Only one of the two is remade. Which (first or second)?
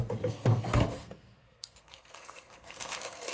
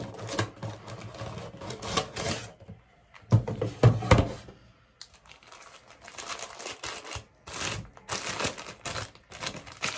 first